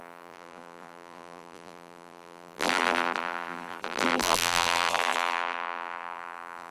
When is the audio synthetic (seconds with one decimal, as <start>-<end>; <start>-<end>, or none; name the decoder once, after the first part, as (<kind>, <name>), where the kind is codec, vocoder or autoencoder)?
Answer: 0.0-6.7 (vocoder, BigVGAN v2)